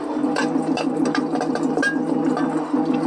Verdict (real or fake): real